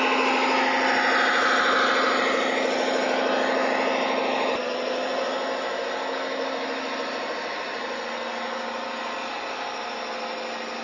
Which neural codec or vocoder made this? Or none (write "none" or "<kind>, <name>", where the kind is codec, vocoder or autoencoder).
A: none